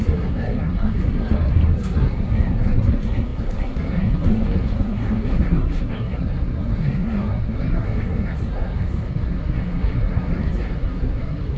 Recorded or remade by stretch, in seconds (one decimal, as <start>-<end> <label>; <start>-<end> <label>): 0.0-11.6 remade